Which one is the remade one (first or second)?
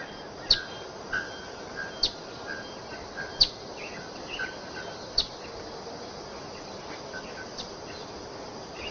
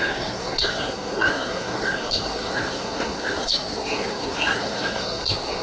second